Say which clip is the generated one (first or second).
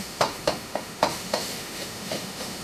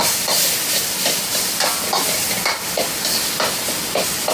first